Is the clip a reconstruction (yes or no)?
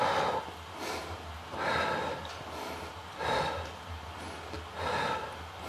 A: no